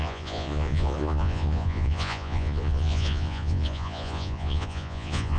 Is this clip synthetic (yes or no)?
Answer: yes